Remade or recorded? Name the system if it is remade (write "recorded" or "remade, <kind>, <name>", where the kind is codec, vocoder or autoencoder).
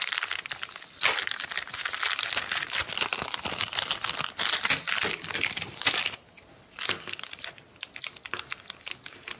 recorded